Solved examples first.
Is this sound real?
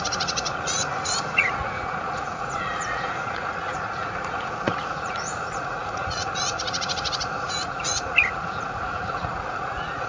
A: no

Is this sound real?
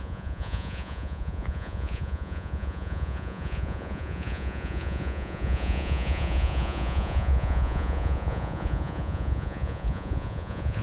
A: no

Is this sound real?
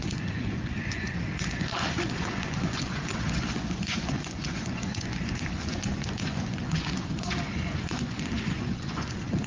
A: no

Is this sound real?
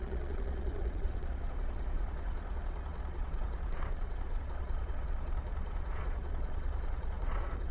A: no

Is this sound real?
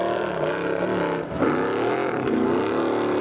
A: yes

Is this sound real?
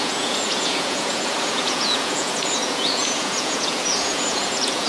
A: no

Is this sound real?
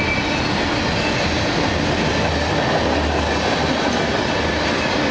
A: yes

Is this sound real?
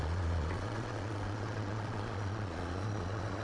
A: no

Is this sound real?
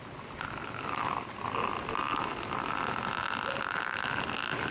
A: yes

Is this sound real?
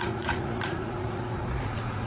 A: no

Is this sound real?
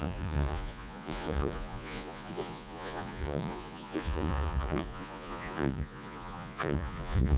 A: no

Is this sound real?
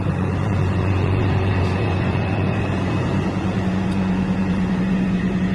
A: no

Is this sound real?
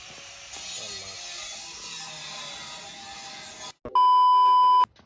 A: yes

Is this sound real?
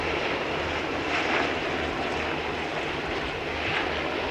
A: yes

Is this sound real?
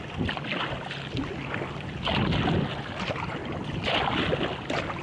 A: yes